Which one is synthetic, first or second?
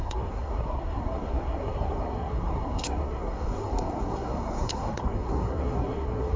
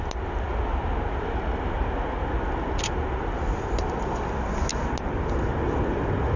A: first